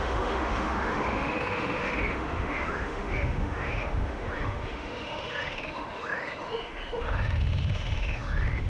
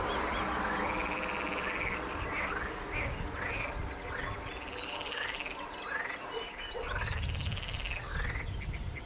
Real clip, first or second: second